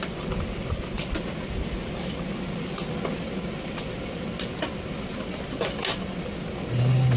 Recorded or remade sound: recorded